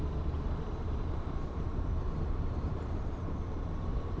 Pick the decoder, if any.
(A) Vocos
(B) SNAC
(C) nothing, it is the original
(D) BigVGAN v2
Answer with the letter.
D